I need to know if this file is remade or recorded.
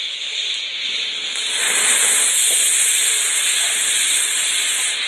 recorded